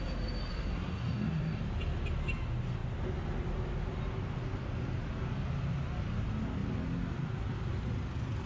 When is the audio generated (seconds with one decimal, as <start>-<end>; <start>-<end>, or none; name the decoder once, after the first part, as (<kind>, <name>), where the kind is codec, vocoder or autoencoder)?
0.5-1.6 (codec, SNAC)